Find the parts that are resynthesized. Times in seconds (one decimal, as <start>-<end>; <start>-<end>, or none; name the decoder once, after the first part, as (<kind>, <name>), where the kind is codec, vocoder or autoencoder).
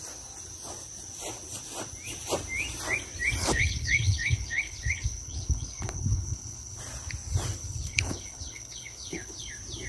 3.4-6.8 (codec, HILCodec); 7.6-9.5